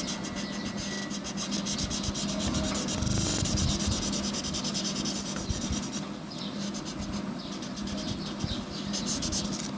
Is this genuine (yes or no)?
yes